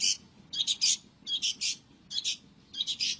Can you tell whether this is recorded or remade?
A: recorded